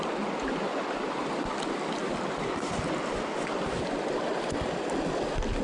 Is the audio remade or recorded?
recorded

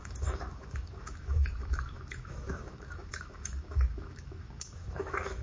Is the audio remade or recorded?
remade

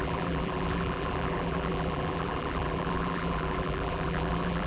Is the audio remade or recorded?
remade